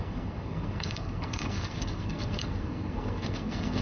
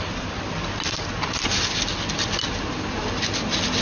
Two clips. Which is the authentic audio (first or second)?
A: second